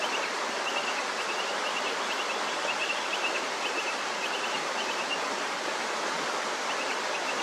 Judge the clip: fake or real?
fake